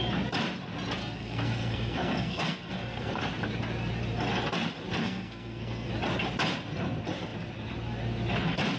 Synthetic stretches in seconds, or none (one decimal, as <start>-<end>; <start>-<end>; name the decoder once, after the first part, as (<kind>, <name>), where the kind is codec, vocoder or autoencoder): 1.0-3.2 (codec, SNAC); 5.0-5.9